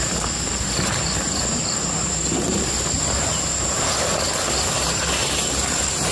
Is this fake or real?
real